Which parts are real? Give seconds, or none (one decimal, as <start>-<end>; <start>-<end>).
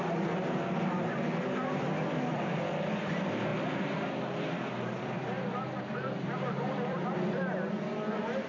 0.0-1.9; 2.6-3.5; 7.7-8.5